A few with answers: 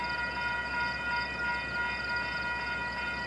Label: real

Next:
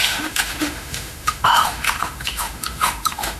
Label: fake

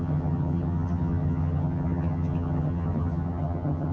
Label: fake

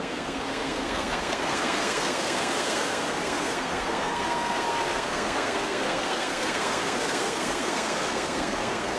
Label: fake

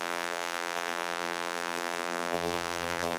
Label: fake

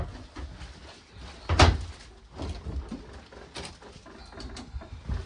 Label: real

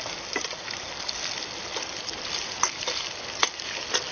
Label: real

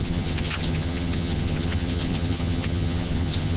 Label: fake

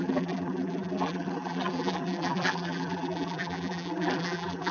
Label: fake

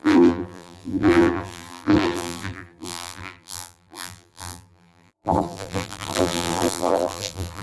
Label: fake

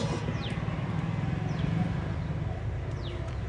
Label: real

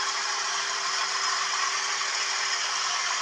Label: real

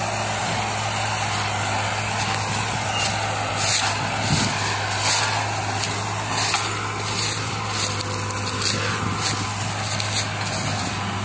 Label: real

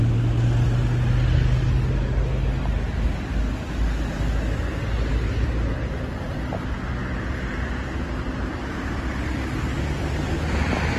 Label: real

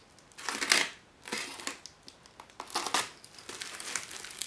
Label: real